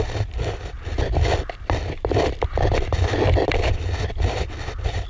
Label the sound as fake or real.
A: real